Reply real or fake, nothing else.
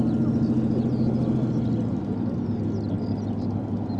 real